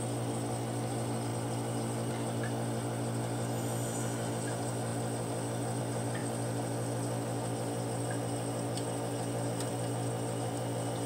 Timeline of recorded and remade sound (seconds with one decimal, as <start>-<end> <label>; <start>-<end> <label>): 0.0-11.1 recorded